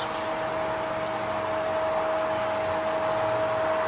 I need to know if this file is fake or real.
real